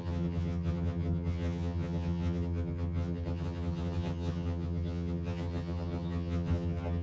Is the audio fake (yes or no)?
yes